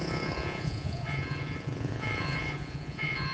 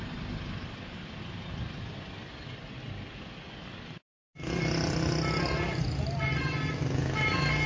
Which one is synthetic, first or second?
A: first